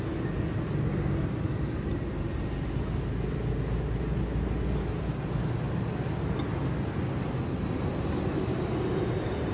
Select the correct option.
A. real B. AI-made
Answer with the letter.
A